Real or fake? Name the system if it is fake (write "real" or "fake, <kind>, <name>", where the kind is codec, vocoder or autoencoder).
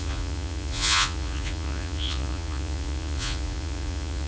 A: fake, vocoder, Vocos